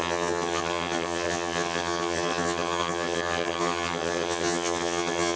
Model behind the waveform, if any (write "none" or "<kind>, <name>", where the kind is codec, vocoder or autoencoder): vocoder, HiFi-GAN